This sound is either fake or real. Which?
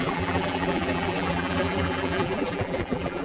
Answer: fake